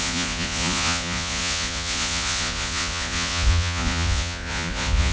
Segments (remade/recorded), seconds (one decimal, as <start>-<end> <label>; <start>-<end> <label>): 0.0-5.1 remade